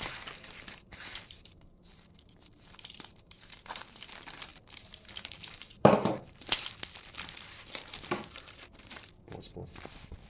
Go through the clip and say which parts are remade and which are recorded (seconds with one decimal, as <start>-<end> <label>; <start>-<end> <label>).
0.0-10.3 remade